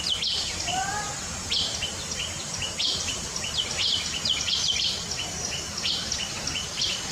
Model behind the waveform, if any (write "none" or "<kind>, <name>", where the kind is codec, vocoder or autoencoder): none